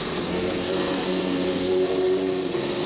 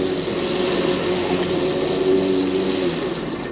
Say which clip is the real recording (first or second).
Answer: second